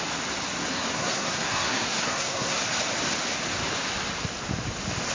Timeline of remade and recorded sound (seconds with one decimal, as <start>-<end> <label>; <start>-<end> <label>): 0.0-0.6 recorded; 0.6-2.6 remade; 2.6-5.1 recorded